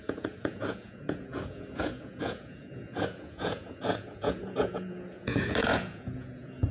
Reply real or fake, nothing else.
fake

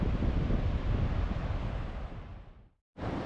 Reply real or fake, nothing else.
real